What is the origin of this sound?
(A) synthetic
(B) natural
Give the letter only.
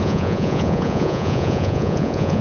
A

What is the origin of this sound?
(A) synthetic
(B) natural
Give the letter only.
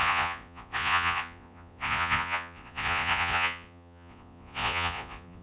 A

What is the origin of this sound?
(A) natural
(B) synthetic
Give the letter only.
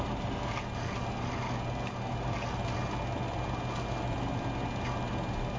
A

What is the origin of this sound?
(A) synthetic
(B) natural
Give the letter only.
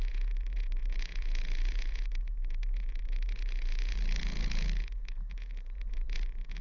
A